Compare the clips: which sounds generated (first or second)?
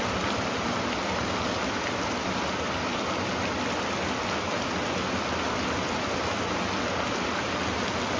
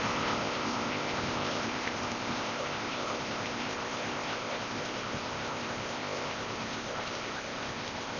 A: second